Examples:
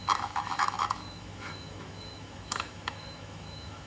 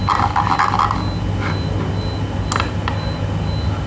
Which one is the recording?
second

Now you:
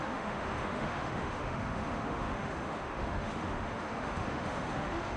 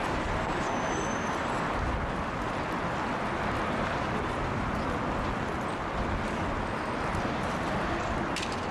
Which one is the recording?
second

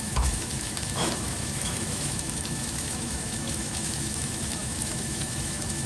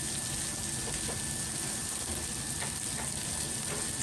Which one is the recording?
second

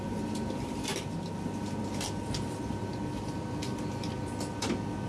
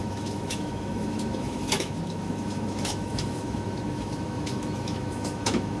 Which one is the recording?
first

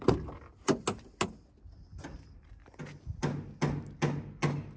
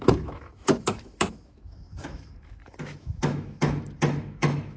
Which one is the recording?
first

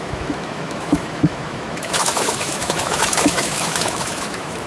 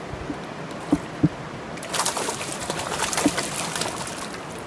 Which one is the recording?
second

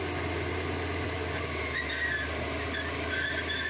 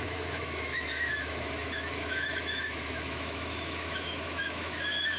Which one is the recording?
first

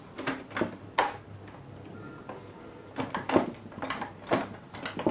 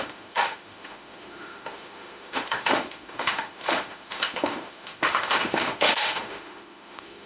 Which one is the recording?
first